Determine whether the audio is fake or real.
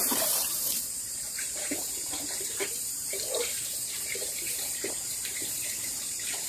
fake